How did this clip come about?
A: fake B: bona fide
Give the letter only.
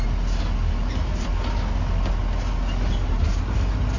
B